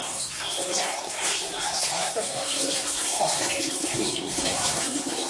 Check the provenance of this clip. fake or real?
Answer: fake